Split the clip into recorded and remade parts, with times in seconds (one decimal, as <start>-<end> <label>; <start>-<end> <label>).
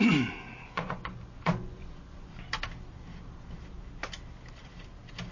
0.0-0.6 recorded; 0.6-2.3 remade; 2.3-5.3 recorded